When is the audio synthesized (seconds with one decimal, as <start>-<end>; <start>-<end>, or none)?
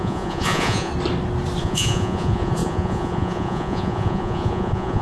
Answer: 0.0-0.9; 1.6-5.0